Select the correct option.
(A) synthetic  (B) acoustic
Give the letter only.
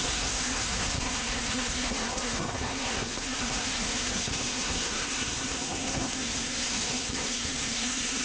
A